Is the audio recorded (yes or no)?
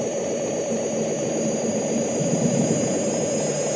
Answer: yes